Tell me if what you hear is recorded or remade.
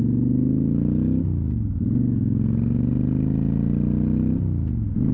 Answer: recorded